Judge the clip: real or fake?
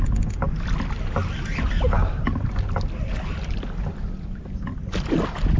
real